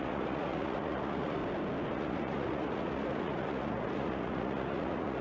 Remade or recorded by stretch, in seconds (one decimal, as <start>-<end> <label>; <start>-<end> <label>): 0.0-1.4 remade; 1.4-1.9 recorded; 1.9-5.2 remade